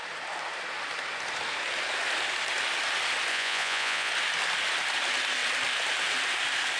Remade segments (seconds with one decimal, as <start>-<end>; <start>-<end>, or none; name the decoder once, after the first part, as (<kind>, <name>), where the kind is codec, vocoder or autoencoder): 3.3-4.1 (vocoder, Vocos)